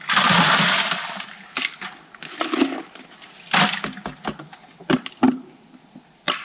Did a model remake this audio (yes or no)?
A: no